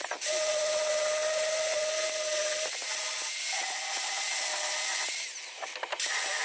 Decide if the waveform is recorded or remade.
recorded